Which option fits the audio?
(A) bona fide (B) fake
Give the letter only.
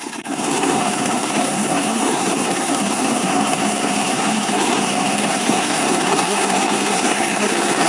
B